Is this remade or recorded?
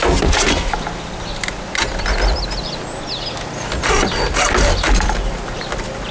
recorded